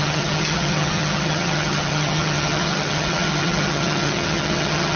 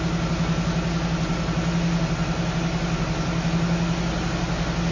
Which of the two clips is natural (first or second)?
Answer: second